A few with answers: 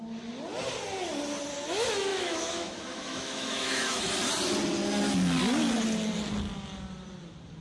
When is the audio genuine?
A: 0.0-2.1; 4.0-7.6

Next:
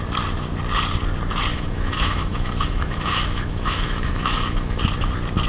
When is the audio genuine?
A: 0.0-1.5; 4.8-5.5

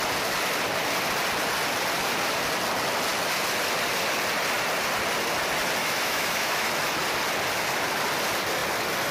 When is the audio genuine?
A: 0.0-5.8; 6.7-9.1

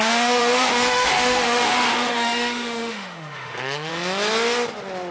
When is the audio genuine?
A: 3.9-5.1

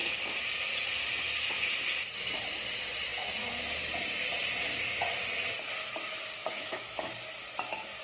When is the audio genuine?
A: 0.0-6.4; 7.1-8.0